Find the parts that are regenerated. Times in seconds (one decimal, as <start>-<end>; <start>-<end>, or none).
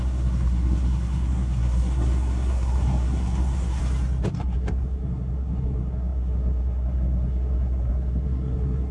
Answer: 0.0-3.8; 4.3-8.9